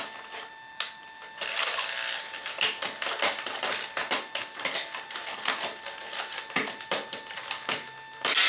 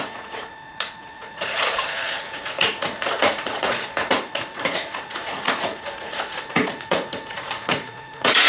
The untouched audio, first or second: first